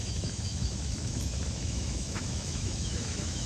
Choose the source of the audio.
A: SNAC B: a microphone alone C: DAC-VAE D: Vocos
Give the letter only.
C